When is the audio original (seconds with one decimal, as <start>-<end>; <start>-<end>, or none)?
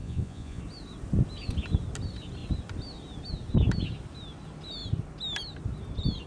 0.6-6.3